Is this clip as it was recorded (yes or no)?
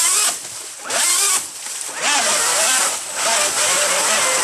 yes